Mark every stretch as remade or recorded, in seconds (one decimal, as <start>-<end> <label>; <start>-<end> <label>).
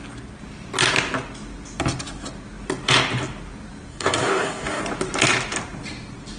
0.0-3.9 recorded; 3.9-4.8 remade; 4.8-6.4 recorded